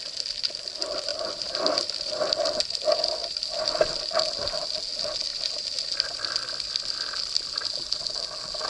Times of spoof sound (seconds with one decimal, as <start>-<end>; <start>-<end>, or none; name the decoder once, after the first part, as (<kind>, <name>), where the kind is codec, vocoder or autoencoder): 1.1-2.2 (vocoder, BigVGAN v2); 3.2-4.2; 5.3-6.9